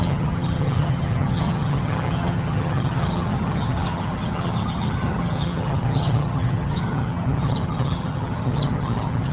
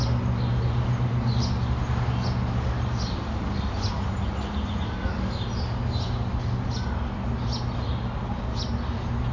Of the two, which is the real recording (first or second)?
second